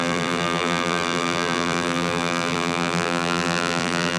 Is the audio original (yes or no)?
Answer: no